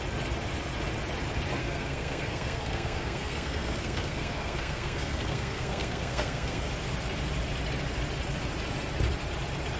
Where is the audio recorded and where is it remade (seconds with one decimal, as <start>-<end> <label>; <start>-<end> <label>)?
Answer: 0.0-1.6 recorded; 1.6-6.7 remade; 6.7-9.8 recorded